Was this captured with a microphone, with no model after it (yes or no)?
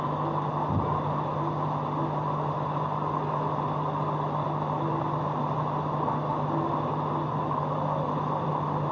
yes